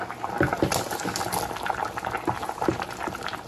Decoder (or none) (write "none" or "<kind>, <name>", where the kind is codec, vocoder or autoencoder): none